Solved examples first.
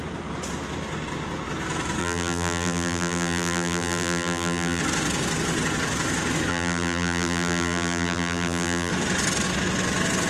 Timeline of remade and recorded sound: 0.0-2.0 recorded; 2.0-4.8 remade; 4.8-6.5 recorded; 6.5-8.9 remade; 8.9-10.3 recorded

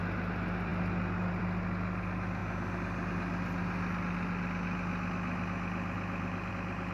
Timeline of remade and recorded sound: 0.0-0.7 recorded; 0.7-1.4 remade; 1.4-6.9 recorded